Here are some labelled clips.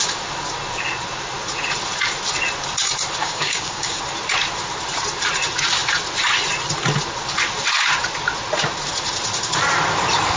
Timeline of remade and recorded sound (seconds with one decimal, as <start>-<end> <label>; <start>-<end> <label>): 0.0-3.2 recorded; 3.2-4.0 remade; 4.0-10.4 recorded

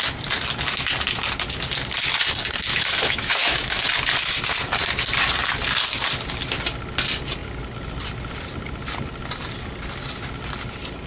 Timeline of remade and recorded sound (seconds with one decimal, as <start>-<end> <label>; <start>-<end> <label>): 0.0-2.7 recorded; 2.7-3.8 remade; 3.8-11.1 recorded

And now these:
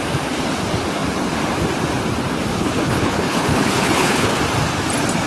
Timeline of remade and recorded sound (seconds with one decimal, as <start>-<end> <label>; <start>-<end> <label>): 0.0-2.5 recorded; 2.5-4.4 remade; 4.4-5.3 recorded